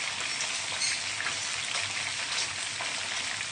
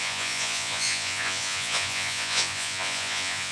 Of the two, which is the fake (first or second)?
second